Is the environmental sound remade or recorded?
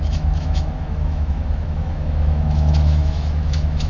remade